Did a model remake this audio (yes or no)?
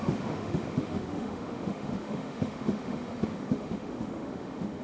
yes